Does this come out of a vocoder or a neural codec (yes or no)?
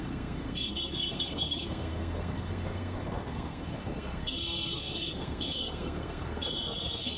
yes